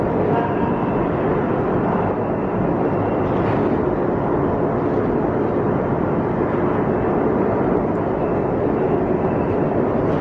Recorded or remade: recorded